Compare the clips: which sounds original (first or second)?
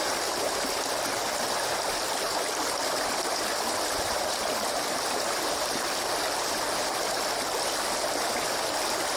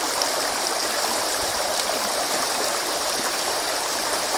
first